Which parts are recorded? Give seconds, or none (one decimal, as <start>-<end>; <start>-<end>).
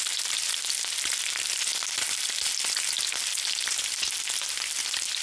0.0-5.2